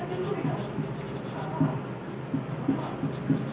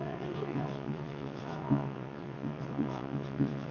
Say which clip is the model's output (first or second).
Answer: second